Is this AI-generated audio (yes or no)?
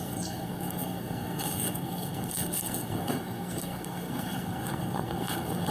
yes